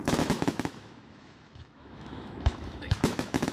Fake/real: fake